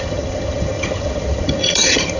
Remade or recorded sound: remade